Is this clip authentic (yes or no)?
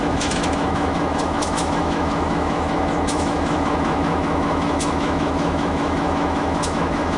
no